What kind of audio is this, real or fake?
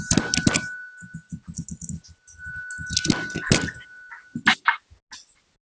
real